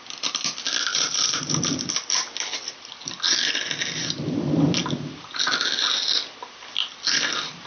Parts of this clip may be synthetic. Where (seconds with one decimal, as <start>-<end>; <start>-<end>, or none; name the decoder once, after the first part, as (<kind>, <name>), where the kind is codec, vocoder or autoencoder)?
0.9-1.6 (vocoder, BigVGAN v2)

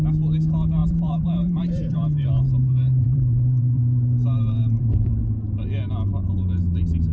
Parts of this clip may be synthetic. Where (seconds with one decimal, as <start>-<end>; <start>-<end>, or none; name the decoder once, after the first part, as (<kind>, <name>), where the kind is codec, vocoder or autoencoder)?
0.8-5.1 (vocoder, BigVGAN v2)

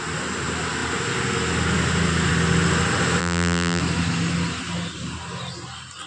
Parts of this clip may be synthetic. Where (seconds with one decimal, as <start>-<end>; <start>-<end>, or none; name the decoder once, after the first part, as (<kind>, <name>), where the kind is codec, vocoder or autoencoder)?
3.2-3.8 (vocoder, BigVGAN v2)

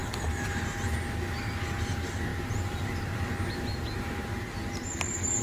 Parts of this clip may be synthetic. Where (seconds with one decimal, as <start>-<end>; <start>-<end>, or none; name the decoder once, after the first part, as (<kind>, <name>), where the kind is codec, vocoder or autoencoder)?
2.3-4.9 (vocoder, BigVGAN v2)

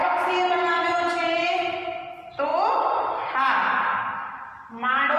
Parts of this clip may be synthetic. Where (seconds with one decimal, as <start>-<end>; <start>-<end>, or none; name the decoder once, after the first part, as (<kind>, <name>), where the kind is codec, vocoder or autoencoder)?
0.0-5.2 (vocoder, BigVGAN v2)

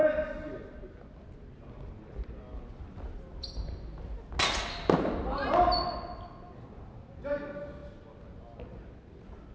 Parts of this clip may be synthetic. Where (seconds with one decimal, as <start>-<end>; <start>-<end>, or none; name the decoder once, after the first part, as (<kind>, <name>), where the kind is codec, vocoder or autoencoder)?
none